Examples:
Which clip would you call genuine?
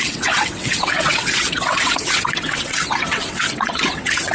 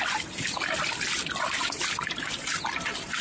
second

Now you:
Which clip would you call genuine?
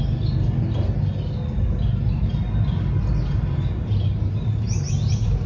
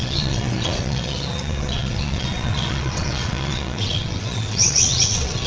first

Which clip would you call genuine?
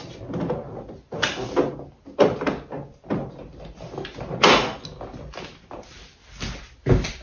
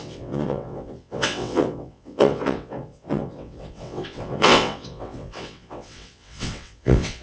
first